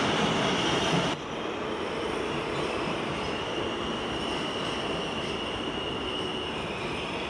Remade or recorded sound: recorded